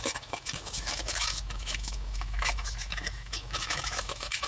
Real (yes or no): no